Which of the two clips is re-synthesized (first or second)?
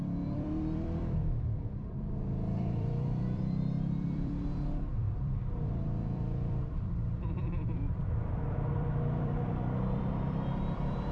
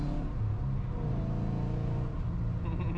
first